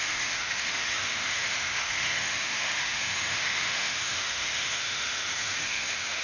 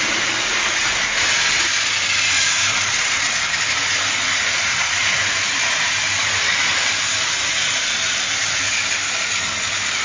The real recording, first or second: second